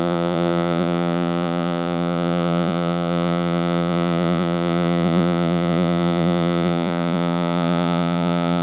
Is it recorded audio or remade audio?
remade